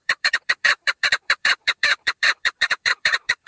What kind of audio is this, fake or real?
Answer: fake